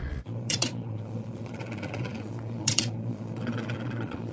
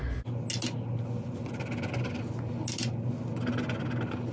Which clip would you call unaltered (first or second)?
second